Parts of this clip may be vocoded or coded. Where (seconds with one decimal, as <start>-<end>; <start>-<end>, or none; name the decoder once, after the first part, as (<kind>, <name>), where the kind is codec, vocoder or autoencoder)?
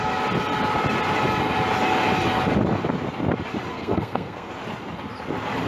3.7-4.5 (codec, SNAC)